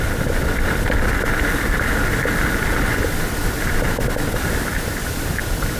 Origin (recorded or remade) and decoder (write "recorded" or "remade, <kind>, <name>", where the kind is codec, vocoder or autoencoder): recorded